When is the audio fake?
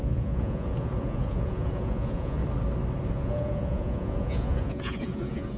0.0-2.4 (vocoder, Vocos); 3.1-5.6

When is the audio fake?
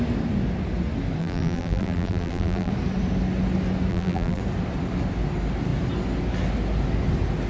1.2-2.7 (vocoder, BigVGAN v2); 3.9-4.4